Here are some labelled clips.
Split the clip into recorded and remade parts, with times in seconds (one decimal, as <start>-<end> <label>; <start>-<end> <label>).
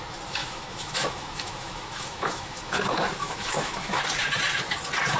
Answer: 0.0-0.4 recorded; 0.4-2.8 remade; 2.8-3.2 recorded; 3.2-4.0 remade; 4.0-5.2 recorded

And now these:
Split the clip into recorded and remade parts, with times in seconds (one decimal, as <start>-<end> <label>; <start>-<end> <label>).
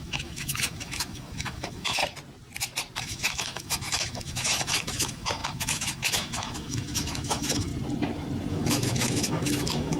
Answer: 0.0-2.0 remade; 2.0-3.0 recorded; 3.0-7.7 remade; 7.7-8.5 recorded; 8.5-10.0 remade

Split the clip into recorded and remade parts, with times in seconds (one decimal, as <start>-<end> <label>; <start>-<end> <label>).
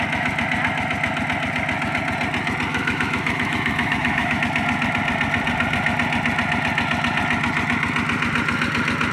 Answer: 0.0-2.7 recorded; 2.7-4.4 remade; 4.4-9.1 recorded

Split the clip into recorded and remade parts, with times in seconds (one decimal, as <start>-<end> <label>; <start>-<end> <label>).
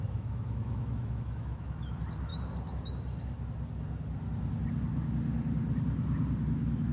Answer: 0.0-2.3 remade; 2.3-6.4 recorded; 6.4-6.9 remade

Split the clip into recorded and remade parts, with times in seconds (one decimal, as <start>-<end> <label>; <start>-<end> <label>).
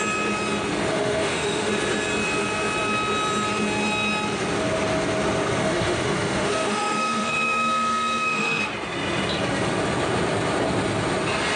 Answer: 0.0-0.9 recorded; 0.9-1.7 remade; 1.7-5.6 recorded; 5.6-8.6 remade; 8.6-11.6 recorded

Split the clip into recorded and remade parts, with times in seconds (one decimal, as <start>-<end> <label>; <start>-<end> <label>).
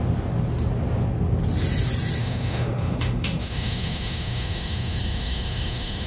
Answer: 0.0-2.2 recorded; 2.2-6.1 remade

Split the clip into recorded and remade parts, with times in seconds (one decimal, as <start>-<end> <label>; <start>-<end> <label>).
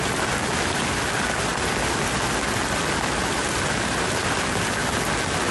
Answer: 0.0-5.5 recorded